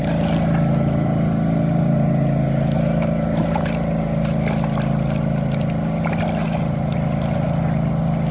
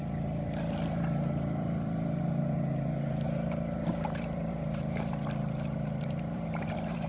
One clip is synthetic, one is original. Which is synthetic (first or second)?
second